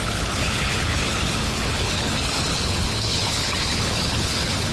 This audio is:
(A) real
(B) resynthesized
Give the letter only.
B